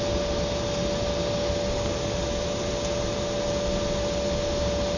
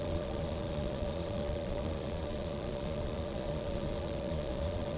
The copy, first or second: second